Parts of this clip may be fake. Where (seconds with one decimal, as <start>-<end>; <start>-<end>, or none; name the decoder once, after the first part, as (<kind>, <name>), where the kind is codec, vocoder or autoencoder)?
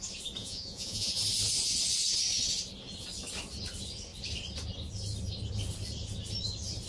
0.4-1.2 (vocoder, Vocos)